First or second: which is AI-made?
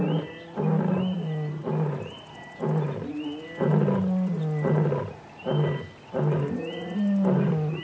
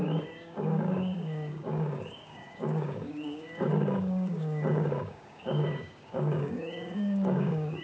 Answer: second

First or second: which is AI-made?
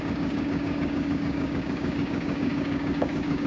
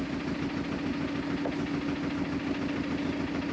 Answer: first